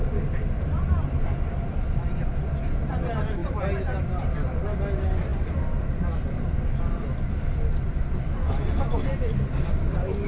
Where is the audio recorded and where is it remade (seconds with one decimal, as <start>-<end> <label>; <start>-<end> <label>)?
0.0-9.5 recorded; 9.5-10.3 remade